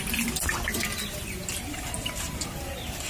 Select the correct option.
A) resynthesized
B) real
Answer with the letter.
B